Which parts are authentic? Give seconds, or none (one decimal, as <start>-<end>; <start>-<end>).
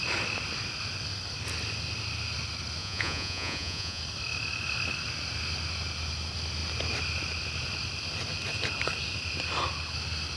0.0-2.8; 4.0-10.4